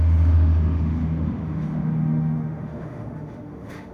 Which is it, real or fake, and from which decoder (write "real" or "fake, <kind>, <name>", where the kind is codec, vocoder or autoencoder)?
fake, autoencoder, DAC-VAE